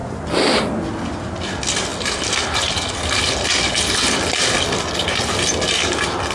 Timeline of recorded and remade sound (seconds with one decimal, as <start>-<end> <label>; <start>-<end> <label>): 0.0-6.3 recorded